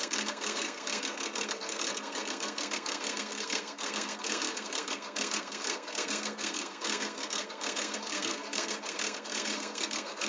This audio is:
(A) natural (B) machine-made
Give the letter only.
B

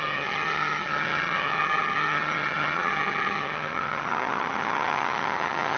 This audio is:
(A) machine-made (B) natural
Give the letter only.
A